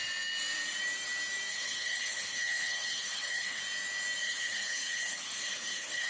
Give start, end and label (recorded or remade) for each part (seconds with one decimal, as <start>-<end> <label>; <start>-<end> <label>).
0.0-1.5 recorded; 1.5-3.6 remade; 3.6-4.2 recorded; 4.2-6.1 remade